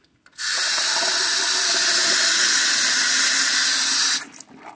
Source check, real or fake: real